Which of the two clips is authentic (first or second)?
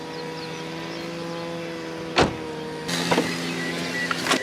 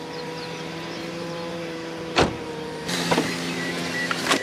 first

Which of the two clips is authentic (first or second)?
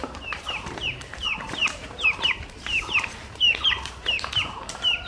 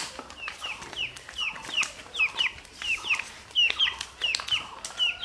second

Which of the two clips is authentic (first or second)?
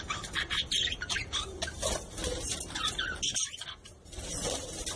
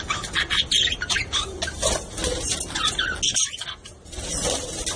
second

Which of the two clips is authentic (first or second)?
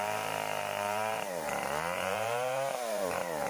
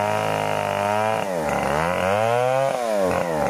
second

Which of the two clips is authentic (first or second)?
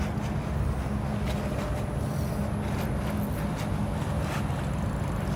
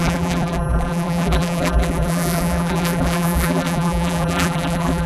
first